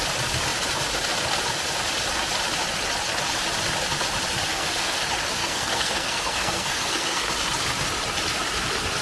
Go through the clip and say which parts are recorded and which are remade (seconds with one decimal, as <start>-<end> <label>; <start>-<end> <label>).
0.0-4.5 recorded; 4.5-5.0 remade; 5.0-5.4 recorded; 5.4-7.3 remade; 7.3-9.0 recorded